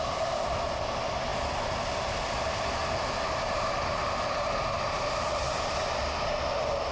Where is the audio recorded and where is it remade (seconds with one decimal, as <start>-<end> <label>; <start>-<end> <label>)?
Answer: 0.0-6.9 recorded